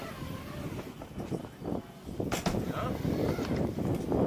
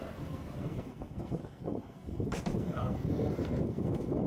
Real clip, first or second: first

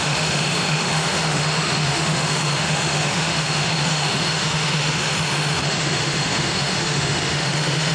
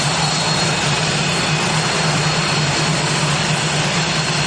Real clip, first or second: second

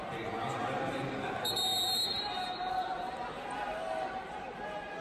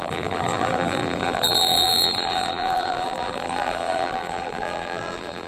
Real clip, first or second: first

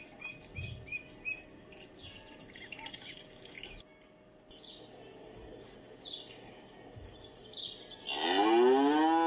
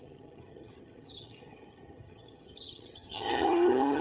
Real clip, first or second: first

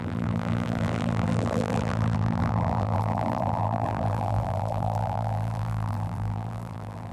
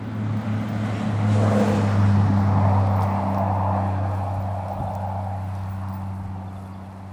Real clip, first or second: second